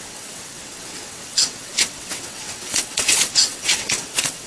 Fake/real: fake